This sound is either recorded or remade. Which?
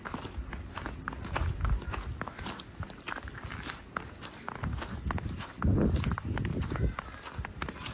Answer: recorded